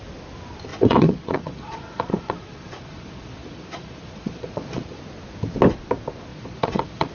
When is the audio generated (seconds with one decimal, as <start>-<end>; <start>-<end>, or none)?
0.7-5.0; 6.3-7.1

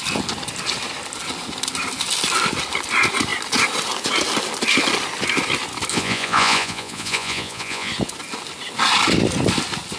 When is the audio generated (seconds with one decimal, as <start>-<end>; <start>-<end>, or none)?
5.9-7.9

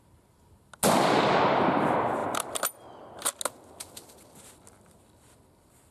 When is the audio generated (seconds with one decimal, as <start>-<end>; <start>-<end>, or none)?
none

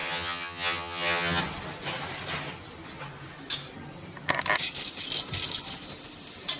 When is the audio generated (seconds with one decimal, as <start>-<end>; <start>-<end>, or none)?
0.0-1.4